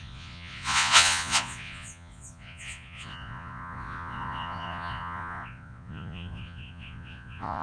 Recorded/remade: remade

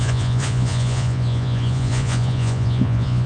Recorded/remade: remade